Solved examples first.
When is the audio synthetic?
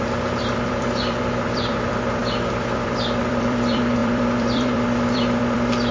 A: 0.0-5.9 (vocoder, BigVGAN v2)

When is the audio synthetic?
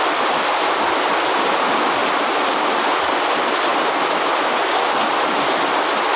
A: none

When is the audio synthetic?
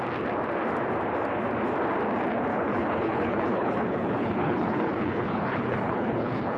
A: 2.5-6.6 (codec, HILCodec)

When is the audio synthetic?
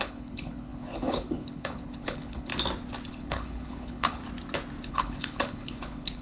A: 0.0-2.5 (codec, HILCodec); 3.1-4.2; 4.9-6.2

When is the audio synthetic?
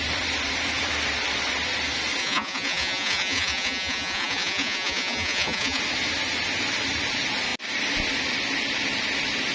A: 2.2-5.8 (vocoder, Vocos)